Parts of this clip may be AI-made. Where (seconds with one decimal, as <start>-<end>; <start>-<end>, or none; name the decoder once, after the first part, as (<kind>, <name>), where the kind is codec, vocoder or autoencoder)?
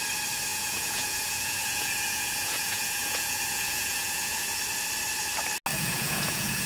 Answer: 0.5-4.5 (vocoder, Vocos); 5.7-6.7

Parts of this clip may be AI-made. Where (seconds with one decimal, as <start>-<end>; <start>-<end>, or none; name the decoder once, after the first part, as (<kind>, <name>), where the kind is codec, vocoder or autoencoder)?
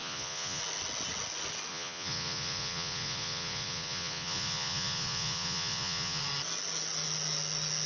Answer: 0.0-0.6 (vocoder, Vocos); 1.7-6.2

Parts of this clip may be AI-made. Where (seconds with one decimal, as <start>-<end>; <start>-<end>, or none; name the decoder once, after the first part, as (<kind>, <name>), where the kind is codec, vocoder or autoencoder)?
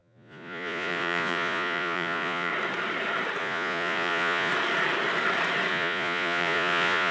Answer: 0.0-2.5 (vocoder, Vocos); 3.4-4.5; 5.7-7.1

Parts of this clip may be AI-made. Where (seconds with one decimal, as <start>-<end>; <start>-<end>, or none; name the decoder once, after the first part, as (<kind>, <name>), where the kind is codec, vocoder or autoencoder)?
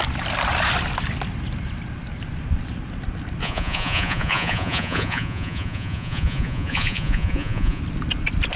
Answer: 3.4-7.8 (vocoder, Vocos)